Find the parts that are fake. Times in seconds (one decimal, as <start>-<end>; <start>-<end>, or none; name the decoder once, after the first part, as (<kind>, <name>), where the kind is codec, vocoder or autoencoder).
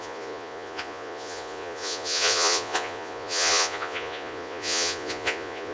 0.0-5.7 (vocoder, Vocos)